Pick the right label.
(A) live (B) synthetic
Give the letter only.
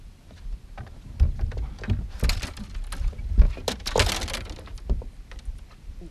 A